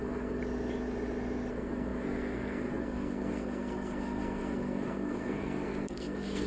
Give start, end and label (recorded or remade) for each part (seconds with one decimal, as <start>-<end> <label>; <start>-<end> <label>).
0.0-0.4 remade; 0.4-1.5 recorded; 1.5-6.5 remade